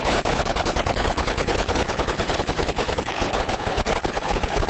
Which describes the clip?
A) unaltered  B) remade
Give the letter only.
B